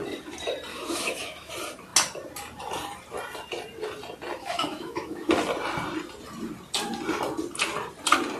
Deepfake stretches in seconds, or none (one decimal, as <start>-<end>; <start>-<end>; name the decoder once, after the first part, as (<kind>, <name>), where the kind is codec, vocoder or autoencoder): 0.7-1.5 (autoencoder, DAC-VAE); 4.4-5.3